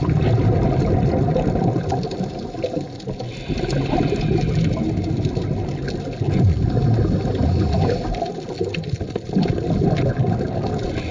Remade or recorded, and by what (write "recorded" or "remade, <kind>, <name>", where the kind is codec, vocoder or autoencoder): recorded